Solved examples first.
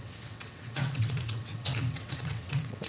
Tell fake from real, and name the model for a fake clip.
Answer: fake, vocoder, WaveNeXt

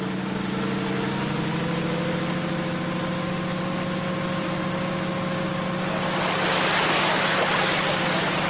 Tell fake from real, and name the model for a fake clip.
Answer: real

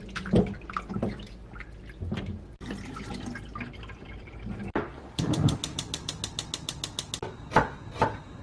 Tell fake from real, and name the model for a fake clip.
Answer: real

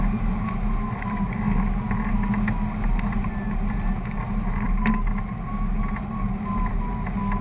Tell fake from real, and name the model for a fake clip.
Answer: real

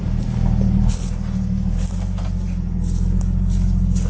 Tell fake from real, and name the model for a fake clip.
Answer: real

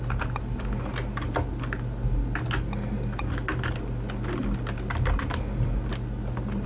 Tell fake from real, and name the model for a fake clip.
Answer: real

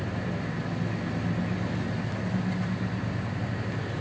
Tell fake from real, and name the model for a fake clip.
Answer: real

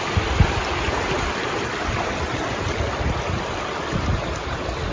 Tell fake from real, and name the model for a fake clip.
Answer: real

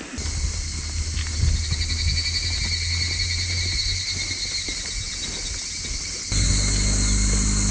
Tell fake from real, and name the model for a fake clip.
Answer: real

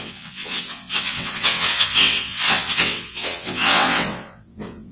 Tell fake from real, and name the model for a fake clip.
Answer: fake, vocoder, WaveNeXt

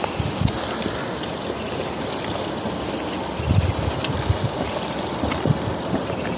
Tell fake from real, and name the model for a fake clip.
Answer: real